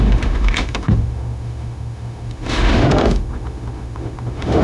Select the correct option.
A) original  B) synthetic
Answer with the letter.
B